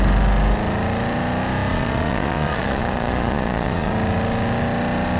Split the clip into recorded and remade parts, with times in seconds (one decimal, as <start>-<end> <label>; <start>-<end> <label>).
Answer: 0.0-1.7 recorded; 1.7-3.9 remade; 3.9-5.2 recorded